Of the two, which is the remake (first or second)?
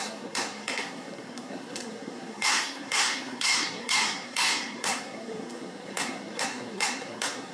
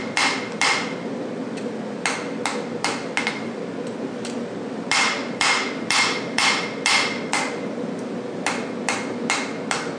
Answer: first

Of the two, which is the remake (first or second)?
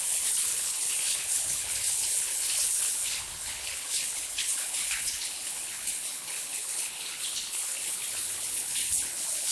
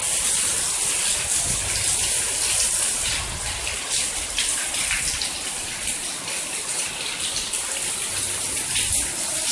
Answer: first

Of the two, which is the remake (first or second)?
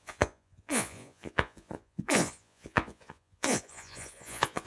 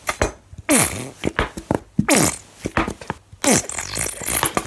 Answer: first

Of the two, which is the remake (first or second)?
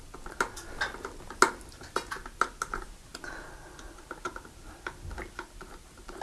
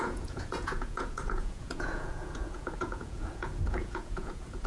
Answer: second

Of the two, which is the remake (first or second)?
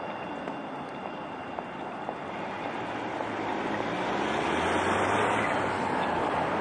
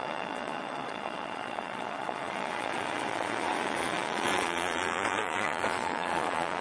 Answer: second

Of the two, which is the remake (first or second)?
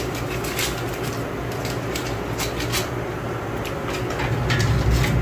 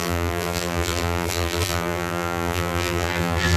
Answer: second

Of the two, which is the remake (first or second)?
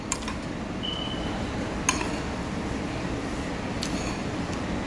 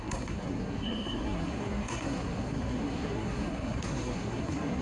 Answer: second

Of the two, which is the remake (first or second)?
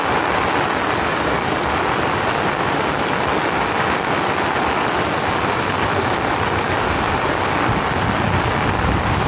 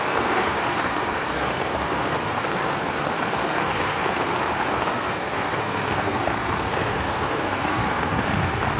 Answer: second